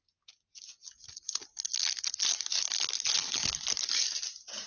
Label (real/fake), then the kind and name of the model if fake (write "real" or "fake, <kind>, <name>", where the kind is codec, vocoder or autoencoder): real